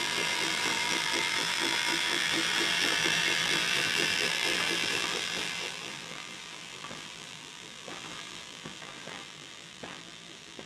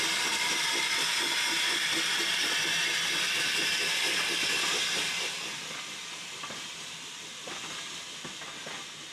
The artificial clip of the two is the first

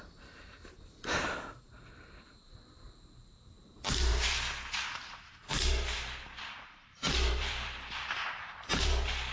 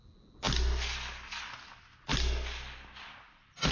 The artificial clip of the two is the first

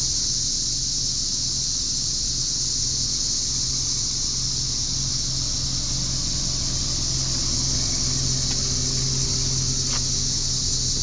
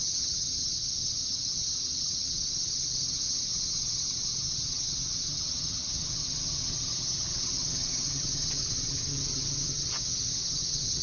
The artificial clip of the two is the second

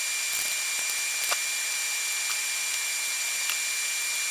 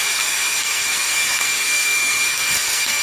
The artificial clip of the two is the second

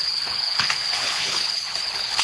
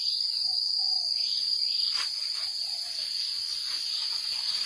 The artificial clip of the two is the first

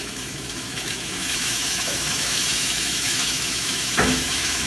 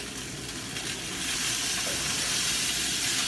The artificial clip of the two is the first